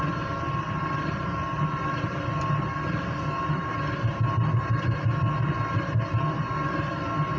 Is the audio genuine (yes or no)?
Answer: yes